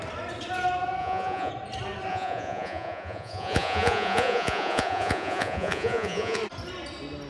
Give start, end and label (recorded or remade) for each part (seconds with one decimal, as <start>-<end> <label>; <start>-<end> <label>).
0.0-1.0 recorded; 1.0-1.5 remade; 1.5-2.1 recorded; 2.1-6.4 remade; 6.4-7.3 recorded